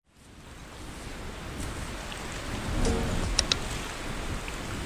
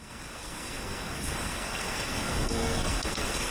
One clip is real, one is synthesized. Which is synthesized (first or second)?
second